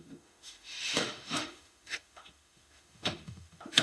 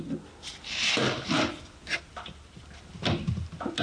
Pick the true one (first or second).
second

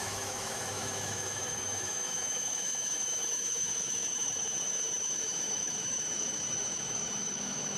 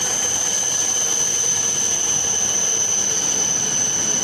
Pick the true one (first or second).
second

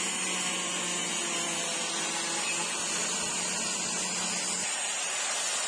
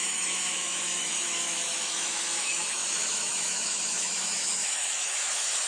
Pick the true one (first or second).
first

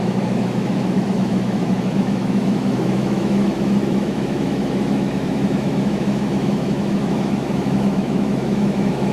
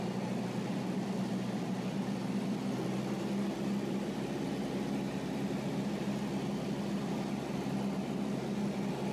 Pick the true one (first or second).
second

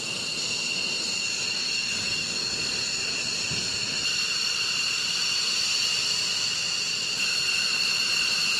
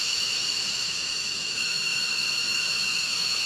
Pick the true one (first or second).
first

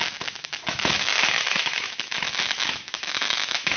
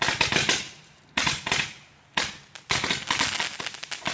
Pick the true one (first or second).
second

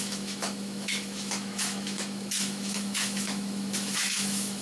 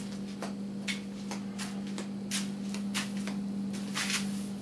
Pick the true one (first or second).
second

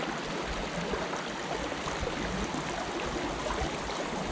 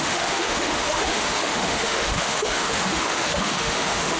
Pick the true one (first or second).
first